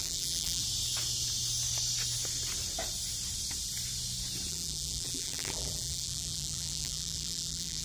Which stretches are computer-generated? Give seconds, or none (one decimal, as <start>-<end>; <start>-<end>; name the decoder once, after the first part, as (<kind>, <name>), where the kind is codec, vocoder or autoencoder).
0.0-0.6 (vocoder, BigVGAN v2); 4.5-7.8

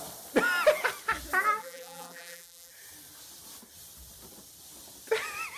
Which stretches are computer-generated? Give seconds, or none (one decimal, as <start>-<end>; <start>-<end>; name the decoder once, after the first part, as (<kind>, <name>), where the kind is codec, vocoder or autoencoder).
1.6-2.7 (vocoder, BigVGAN v2)

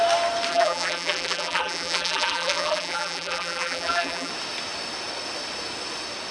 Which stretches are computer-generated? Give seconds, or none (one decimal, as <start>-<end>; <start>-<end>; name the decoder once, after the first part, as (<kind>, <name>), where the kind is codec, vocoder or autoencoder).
0.5-4.3 (vocoder, BigVGAN v2)

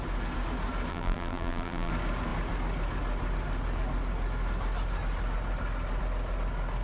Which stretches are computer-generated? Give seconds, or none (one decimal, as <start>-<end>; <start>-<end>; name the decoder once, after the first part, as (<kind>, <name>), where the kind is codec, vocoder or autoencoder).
0.9-1.9 (vocoder, BigVGAN v2)

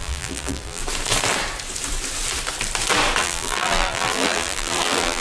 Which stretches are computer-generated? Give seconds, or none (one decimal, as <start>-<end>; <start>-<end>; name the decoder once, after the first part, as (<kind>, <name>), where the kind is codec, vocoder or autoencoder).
0.0-0.8 (vocoder, BigVGAN v2); 3.2-5.2

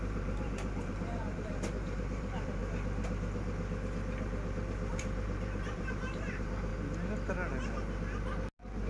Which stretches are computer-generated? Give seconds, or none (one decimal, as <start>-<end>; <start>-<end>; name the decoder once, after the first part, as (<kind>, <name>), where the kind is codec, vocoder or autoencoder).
0.0-2.6 (vocoder, BigVGAN v2); 4.9-6.7

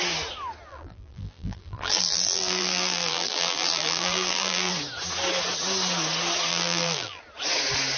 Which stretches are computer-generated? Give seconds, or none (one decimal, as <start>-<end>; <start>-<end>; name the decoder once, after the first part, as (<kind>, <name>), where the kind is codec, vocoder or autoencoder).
0.7-4.7 (vocoder, BigVGAN v2); 6.5-7.2